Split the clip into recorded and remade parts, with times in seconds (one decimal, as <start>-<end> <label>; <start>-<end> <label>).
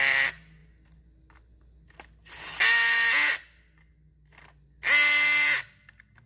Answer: 0.0-6.3 recorded